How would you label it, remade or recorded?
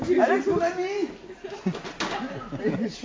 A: recorded